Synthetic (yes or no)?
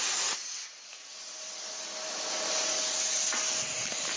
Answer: no